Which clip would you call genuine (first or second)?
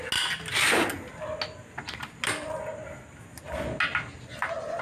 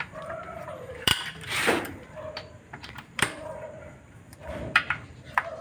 first